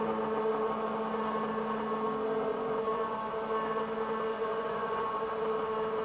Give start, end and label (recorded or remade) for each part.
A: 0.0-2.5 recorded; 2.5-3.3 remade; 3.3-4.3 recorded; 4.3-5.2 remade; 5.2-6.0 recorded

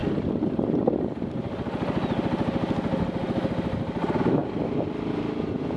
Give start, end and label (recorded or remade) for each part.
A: 0.0-5.8 recorded

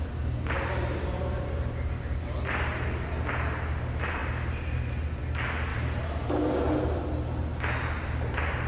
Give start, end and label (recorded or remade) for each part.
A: 0.0-5.7 recorded; 5.7-7.0 remade; 7.0-8.7 recorded

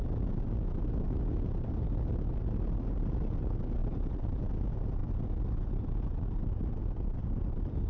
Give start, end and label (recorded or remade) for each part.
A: 0.0-3.8 recorded; 3.8-4.4 remade; 4.4-7.9 recorded

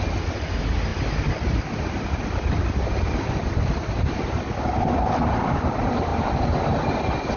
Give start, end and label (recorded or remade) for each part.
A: 0.0-0.9 recorded; 0.9-5.1 remade; 5.1-7.4 recorded

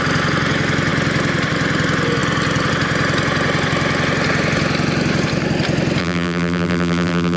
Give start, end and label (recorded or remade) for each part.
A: 0.0-6.0 recorded; 6.0-7.4 remade

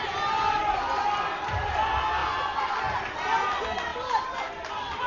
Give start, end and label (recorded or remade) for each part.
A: 0.0-5.1 recorded

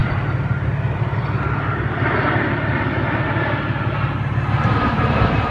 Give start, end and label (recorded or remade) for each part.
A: 0.0-3.3 remade; 3.3-5.5 recorded